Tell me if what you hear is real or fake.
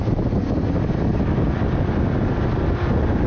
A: real